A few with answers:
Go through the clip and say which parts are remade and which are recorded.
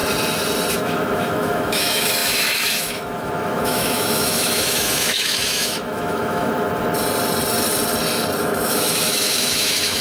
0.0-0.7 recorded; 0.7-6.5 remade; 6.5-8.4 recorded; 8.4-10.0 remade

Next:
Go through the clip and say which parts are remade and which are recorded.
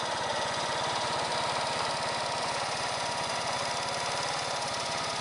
0.0-1.3 remade; 1.3-2.4 recorded; 2.4-3.6 remade; 3.6-4.3 recorded; 4.3-5.2 remade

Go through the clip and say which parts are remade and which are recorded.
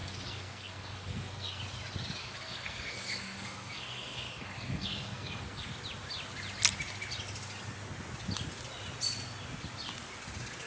0.0-1.6 remade; 1.6-2.2 recorded; 2.2-5.8 remade; 5.8-10.7 recorded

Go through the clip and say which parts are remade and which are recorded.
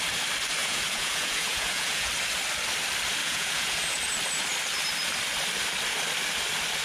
0.0-0.6 recorded; 0.6-2.1 remade; 2.1-3.2 recorded; 3.2-4.0 remade; 4.0-6.8 recorded